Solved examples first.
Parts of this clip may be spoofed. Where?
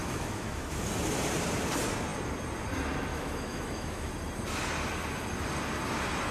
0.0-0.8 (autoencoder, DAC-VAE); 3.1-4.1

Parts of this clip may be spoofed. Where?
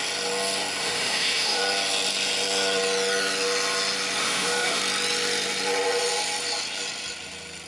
0.8-1.6 (autoencoder, DAC-VAE); 4.2-4.8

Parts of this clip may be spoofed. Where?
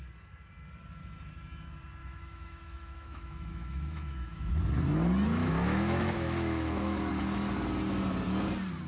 2.0-4.5 (autoencoder, DAC-VAE); 5.4-7.1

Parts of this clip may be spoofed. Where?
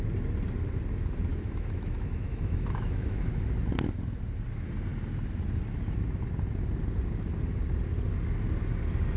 1.3-3.5 (autoencoder, DAC-VAE)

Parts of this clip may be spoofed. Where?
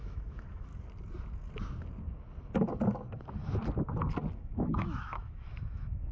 0.0-0.7 (autoencoder, DAC-VAE); 4.4-6.1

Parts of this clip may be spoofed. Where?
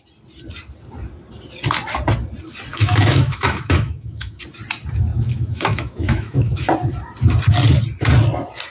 2.7-4.4 (autoencoder, DAC-VAE); 5.1-6.7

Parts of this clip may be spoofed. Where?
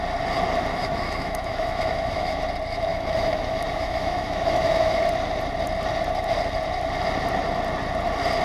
0.7-2.4 (autoencoder, DAC-VAE); 2.9-5.0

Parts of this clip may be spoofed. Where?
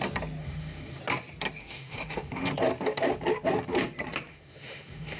0.4-1.0 (autoencoder, DAC-VAE); 1.6-2.5; 4.3-5.2